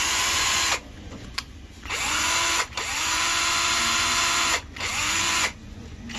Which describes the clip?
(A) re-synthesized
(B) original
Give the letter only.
A